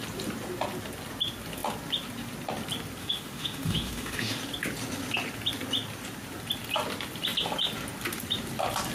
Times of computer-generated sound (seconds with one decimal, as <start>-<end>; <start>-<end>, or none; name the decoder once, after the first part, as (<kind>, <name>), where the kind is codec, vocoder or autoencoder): 3.0-4.4 (autoencoder, DAC-VAE)

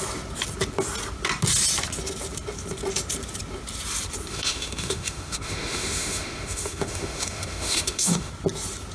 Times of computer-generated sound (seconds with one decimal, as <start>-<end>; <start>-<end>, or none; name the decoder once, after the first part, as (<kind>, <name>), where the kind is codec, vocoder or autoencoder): 4.3-8.3 (autoencoder, DAC-VAE)

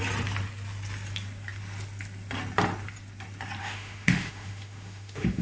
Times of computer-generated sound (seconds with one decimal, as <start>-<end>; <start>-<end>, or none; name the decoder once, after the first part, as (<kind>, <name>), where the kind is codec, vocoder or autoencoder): 3.6-5.4 (autoencoder, DAC-VAE)

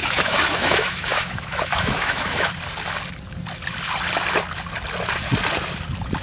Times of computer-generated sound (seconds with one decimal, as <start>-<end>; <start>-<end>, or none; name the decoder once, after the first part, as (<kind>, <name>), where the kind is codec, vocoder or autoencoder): 0.0-2.5 (autoencoder, DAC-VAE)

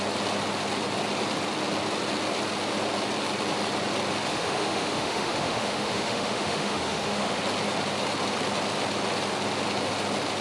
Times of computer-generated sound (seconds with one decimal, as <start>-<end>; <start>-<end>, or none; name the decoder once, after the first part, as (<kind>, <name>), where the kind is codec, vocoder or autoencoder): 4.3-7.4 (autoencoder, DAC-VAE)

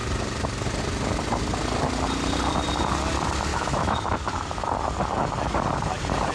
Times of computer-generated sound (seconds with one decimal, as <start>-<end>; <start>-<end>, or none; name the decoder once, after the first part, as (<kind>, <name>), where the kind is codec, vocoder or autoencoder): 3.5-4.0 (autoencoder, DAC-VAE)

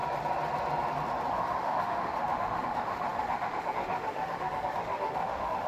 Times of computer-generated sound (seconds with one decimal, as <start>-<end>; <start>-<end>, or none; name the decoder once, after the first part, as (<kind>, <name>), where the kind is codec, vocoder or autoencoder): 1.3-5.7 (autoencoder, DAC-VAE)

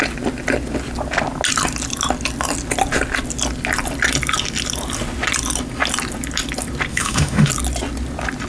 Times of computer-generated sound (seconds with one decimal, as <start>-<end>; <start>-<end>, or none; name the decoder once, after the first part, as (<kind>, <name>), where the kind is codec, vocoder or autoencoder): 6.9-7.5 (autoencoder, DAC-VAE)